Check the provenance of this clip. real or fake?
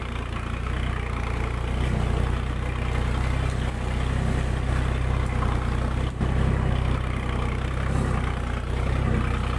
real